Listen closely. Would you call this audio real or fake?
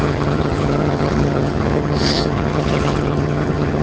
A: fake